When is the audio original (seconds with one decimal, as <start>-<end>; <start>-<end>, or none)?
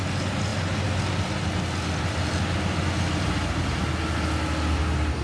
0.0-5.2